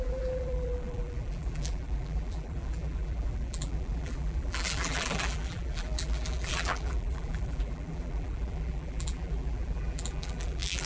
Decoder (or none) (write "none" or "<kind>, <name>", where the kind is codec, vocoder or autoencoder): vocoder, BigVGAN v2